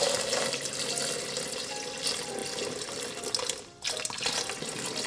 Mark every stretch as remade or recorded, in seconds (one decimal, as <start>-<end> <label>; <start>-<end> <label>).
0.0-5.1 recorded